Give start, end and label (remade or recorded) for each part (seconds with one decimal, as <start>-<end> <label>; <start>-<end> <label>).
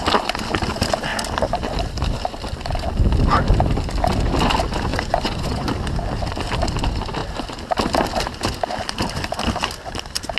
0.0-4.9 recorded; 4.9-5.7 remade; 5.7-10.4 recorded